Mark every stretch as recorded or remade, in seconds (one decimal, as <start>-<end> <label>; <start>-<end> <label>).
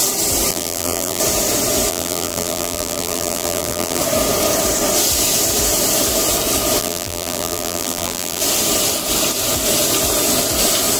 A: 0.0-0.5 recorded; 0.5-1.2 remade; 1.2-1.9 recorded; 1.9-4.0 remade; 4.0-6.8 recorded; 6.8-8.4 remade; 8.4-11.0 recorded